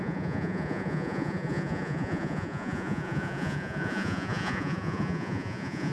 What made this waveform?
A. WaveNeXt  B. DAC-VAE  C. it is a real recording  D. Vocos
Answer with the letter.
D